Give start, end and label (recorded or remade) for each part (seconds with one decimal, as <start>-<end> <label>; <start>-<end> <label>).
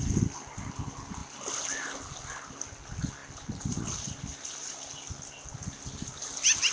0.0-6.7 recorded